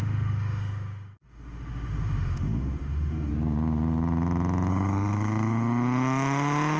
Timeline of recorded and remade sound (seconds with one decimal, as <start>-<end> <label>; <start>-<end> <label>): 0.0-3.3 remade; 3.3-4.7 recorded; 4.7-6.8 remade